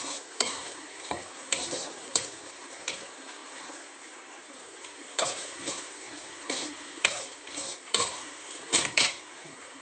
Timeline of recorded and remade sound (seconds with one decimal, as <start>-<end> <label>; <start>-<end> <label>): 0.0-9.8 remade

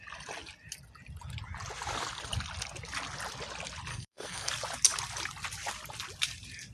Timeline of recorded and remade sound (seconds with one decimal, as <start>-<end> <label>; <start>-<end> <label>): 0.0-3.9 recorded; 3.9-4.5 remade; 4.5-6.7 recorded

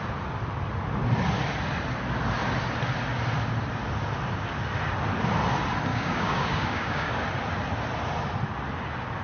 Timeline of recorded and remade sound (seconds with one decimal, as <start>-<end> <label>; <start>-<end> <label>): 0.0-5.9 recorded; 5.9-7.2 remade; 7.2-9.2 recorded

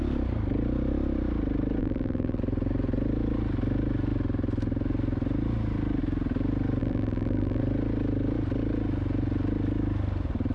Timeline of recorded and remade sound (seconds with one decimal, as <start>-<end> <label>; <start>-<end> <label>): 0.0-1.8 recorded; 1.8-2.4 remade; 2.4-6.8 recorded; 6.8-7.6 remade; 7.6-10.5 recorded

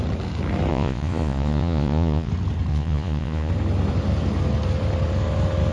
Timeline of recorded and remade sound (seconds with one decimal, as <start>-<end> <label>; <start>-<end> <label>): 0.0-0.7 recorded; 0.7-2.3 remade; 2.3-2.7 recorded; 2.7-3.5 remade; 3.5-5.7 recorded

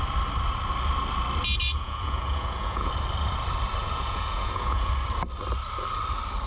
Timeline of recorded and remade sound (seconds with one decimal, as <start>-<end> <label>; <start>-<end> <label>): 0.0-1.7 recorded; 1.7-2.9 remade; 2.9-3.8 recorded; 3.8-4.9 remade; 4.9-6.5 recorded

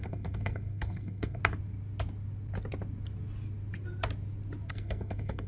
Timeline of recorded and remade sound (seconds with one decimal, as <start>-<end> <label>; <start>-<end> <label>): 0.0-1.4 remade; 1.4-4.7 recorded; 4.7-5.5 remade

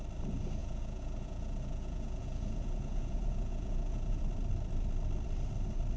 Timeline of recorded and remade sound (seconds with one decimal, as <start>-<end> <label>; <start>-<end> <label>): 0.0-0.6 recorded; 0.6-4.2 remade; 4.2-6.0 recorded